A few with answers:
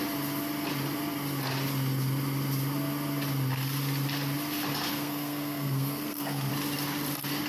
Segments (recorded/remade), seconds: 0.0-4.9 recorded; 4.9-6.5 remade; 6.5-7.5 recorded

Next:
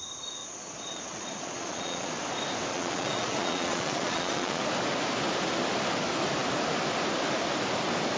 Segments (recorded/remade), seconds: 0.0-0.4 recorded; 0.4-2.1 remade; 2.1-2.7 recorded; 2.7-4.6 remade; 4.6-8.2 recorded

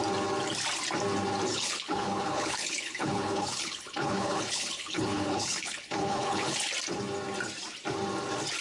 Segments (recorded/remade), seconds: 0.0-1.5 recorded; 1.5-6.7 remade; 6.7-8.6 recorded

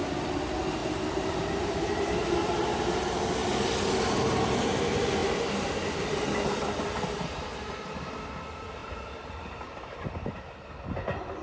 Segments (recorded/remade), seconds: 0.0-0.8 recorded; 0.8-2.8 remade; 2.8-8.8 recorded; 8.8-10.7 remade; 10.7-11.4 recorded

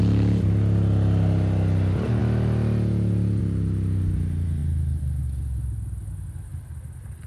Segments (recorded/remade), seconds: 0.0-7.3 recorded

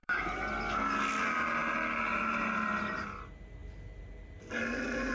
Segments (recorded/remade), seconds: 0.0-0.5 remade; 0.5-5.1 recorded

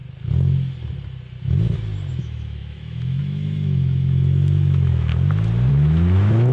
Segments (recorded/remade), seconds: 0.0-2.1 recorded; 2.1-5.1 remade; 5.1-5.7 recorded; 5.7-6.5 remade

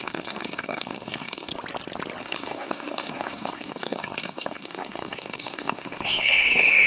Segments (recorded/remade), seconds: 0.0-1.5 remade; 1.5-2.2 recorded; 2.2-6.9 remade